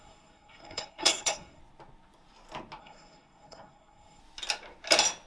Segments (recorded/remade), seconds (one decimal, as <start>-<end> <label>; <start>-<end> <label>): 0.0-1.6 remade; 1.6-2.8 recorded; 2.8-4.2 remade; 4.2-5.3 recorded